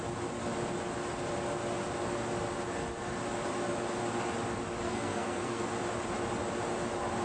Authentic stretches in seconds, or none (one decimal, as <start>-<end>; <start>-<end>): 0.0-4.8; 5.6-7.2